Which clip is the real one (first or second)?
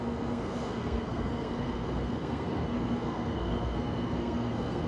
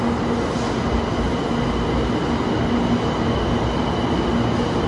second